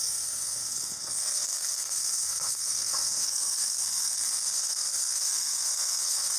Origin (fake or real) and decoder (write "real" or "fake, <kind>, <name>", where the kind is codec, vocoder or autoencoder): fake, codec, SNAC